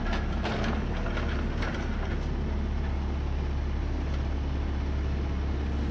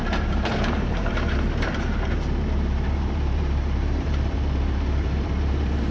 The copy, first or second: second